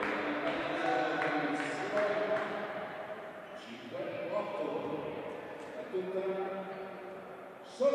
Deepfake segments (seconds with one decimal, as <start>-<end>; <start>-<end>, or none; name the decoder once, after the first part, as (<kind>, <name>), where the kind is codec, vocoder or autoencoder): 0.0-0.8 (vocoder, BigVGAN v2); 1.9-7.9